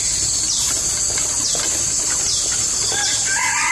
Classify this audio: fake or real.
real